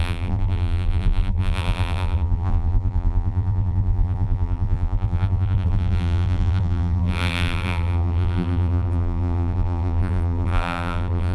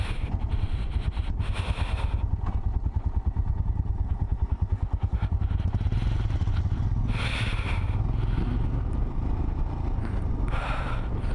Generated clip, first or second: first